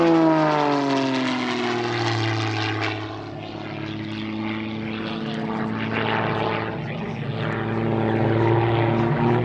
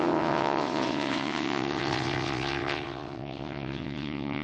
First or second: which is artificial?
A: second